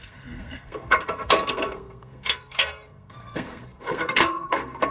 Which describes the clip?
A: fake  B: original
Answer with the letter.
A